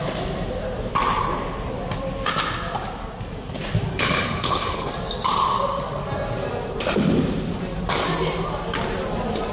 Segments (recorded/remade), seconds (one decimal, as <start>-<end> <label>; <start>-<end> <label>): 0.0-3.9 recorded; 3.9-4.9 remade; 4.9-9.5 recorded